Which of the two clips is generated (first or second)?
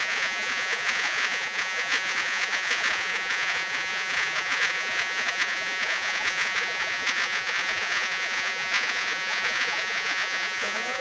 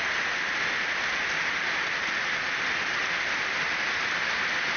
first